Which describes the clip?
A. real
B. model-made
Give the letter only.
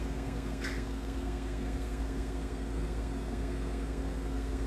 B